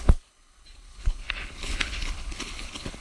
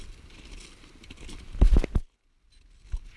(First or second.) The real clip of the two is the second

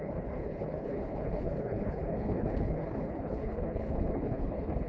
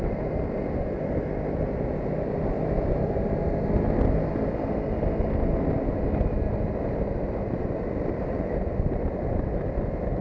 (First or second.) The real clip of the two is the second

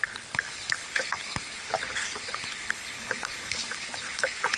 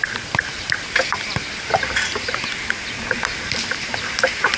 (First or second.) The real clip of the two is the second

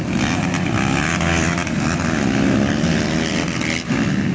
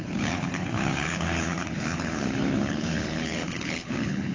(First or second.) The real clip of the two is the first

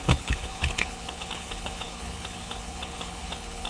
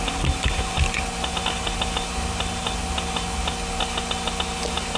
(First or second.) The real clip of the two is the second